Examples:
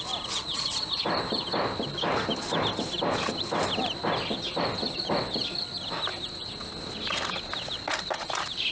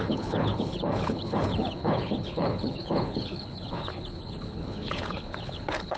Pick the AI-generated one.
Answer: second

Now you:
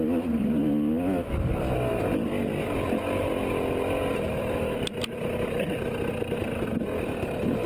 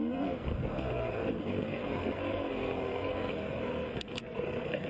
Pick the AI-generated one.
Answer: second